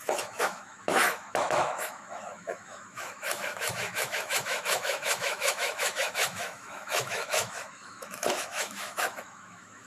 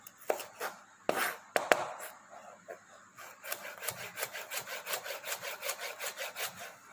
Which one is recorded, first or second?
second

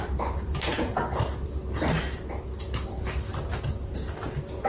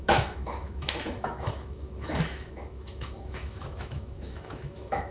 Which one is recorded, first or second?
first